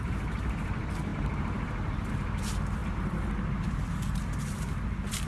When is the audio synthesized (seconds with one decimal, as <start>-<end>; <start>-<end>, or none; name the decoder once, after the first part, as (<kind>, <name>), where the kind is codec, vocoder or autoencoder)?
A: 0.0-2.8 (vocoder, BigVGAN v2)